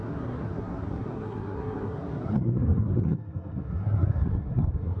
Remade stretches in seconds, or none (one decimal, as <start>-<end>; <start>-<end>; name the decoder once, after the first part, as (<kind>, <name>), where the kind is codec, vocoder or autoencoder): 0.0-5.0 (codec, SNAC)